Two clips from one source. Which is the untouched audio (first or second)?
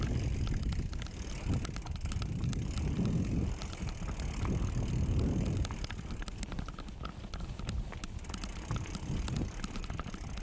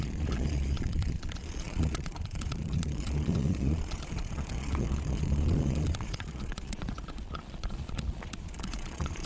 first